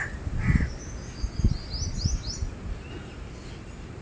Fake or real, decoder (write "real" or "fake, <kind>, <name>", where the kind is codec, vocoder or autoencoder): real